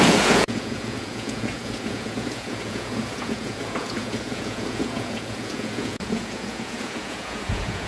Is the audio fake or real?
fake